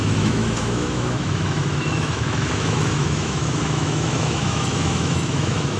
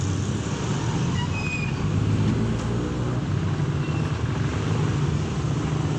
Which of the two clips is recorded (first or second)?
second